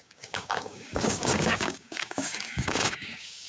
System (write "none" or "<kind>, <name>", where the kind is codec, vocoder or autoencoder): codec, DAC